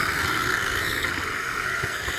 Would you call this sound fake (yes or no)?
yes